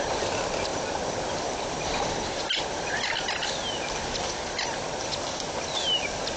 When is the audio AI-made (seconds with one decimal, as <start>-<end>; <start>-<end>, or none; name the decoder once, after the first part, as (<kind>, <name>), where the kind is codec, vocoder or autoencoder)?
none